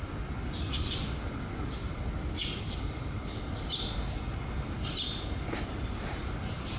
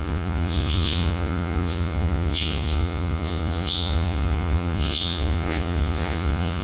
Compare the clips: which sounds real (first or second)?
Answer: first